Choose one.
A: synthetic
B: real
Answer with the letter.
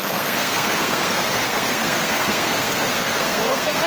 A